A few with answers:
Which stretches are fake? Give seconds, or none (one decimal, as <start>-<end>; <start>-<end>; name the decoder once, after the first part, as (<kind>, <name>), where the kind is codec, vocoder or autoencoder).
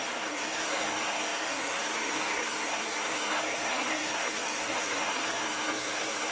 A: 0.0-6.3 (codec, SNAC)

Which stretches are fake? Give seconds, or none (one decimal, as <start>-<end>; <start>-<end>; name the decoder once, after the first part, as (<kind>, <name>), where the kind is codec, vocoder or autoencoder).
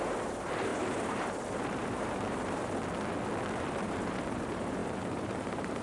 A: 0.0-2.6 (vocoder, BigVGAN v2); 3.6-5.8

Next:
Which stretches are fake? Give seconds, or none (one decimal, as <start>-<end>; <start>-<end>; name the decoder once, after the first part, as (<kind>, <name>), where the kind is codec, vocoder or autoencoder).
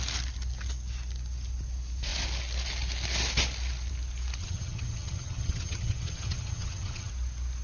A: 4.4-7.1 (vocoder, HiFi-GAN)